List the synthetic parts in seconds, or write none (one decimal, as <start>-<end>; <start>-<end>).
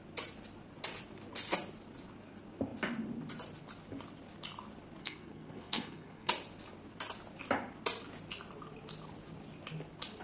5.0-6.3